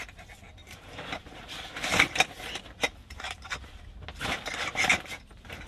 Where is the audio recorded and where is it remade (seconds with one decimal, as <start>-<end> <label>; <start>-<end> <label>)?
0.0-0.6 recorded; 0.6-4.0 remade; 4.0-4.9 recorded; 4.9-5.7 remade